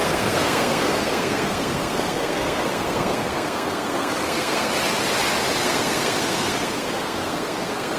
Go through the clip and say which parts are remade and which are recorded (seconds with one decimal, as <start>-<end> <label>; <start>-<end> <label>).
0.0-4.7 remade; 4.7-5.6 recorded; 5.6-8.0 remade